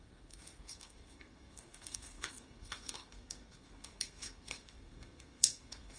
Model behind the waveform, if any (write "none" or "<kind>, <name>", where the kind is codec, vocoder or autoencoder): codec, SNAC